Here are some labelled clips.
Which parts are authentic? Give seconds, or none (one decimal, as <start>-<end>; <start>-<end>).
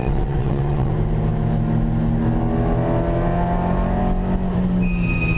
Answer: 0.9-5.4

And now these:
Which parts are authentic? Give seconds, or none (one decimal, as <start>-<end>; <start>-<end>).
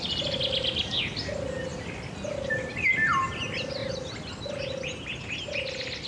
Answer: 0.0-6.1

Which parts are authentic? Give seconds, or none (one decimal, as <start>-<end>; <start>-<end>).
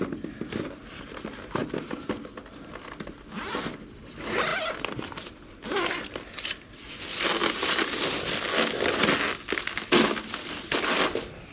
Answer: 0.0-11.5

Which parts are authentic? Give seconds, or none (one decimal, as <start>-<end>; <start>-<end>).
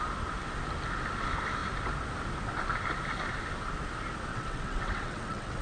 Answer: 0.0-4.3